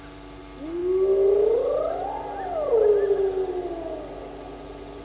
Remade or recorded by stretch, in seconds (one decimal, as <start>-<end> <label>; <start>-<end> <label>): 0.0-5.0 recorded